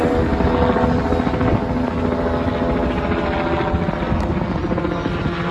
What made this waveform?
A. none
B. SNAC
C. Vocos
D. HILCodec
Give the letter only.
A